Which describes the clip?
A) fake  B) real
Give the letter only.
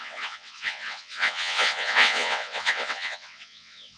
A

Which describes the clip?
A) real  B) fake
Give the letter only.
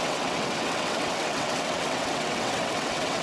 B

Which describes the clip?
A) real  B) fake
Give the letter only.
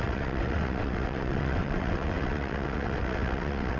B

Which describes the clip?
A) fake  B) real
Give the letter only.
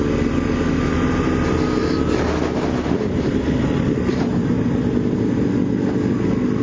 B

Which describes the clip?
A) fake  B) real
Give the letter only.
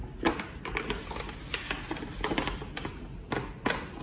B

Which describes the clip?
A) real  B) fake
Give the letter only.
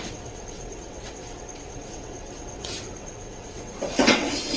B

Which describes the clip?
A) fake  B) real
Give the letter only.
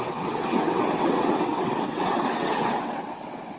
A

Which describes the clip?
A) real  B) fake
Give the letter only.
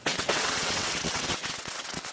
B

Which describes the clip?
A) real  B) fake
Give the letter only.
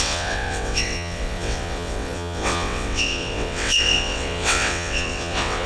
B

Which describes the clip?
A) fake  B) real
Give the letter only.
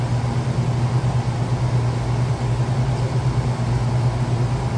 B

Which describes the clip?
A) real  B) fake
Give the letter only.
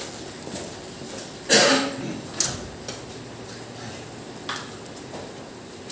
A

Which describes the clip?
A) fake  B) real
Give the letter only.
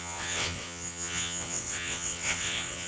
A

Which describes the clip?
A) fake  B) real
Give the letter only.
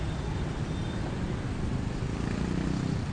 B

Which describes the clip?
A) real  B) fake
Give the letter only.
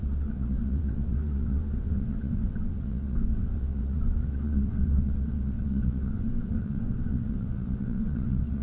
B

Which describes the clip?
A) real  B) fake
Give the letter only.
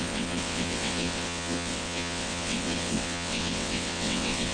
B